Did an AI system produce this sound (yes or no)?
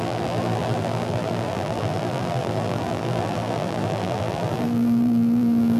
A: yes